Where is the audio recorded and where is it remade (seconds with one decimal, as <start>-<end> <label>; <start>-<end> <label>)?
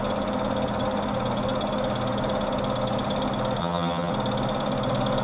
0.0-3.6 recorded; 3.6-4.1 remade; 4.1-5.2 recorded